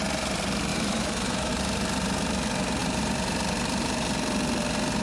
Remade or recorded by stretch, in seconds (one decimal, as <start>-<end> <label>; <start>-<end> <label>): 0.0-0.7 recorded; 0.7-1.5 remade; 1.5-5.0 recorded